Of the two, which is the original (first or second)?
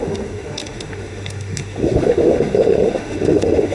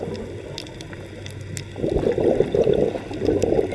second